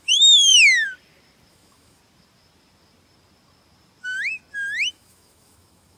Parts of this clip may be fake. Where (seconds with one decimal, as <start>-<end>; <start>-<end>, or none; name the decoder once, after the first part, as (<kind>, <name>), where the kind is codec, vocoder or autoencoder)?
0.0-0.5 (autoencoder, DAC-VAE); 1.5-2.0; 4.9-6.0